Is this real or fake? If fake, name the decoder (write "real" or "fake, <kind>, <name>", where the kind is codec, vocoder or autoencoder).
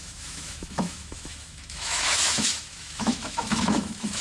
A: fake, autoencoder, DAC-VAE